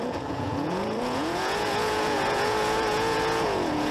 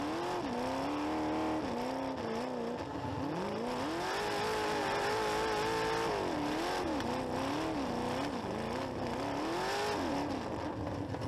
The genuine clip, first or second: second